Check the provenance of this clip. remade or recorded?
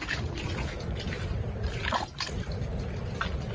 recorded